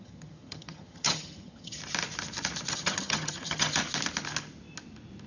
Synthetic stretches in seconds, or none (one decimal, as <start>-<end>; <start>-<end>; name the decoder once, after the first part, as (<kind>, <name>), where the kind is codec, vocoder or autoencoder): 0.0-1.8 (vocoder, HiFi-GAN); 2.7-3.8